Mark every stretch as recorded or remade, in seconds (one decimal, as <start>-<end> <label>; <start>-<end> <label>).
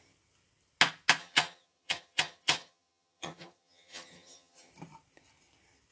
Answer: 0.0-1.2 recorded; 1.2-4.7 remade; 4.7-5.9 recorded